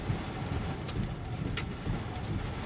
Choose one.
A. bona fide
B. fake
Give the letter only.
A